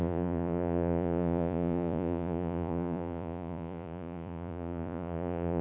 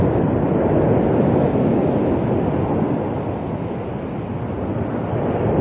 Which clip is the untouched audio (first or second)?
second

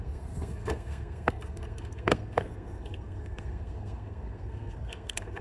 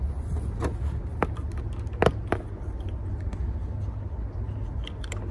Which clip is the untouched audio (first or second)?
second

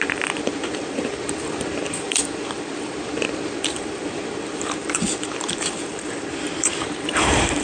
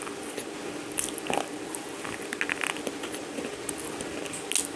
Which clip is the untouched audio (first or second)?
second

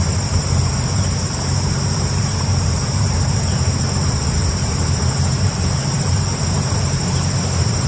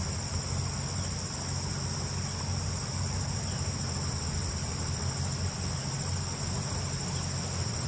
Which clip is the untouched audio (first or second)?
second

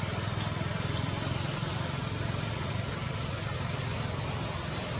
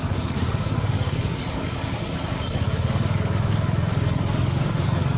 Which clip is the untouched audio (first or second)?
first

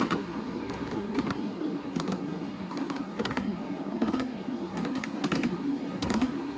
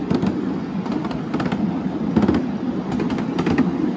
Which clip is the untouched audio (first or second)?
second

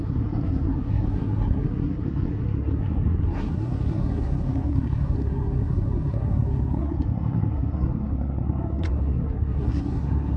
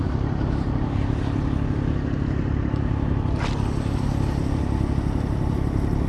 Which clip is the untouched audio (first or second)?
second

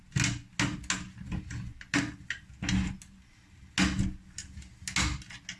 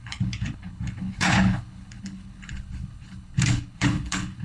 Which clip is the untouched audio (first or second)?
first